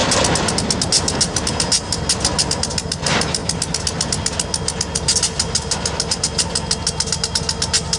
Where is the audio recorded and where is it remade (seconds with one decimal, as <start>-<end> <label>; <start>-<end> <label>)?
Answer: 0.0-8.0 recorded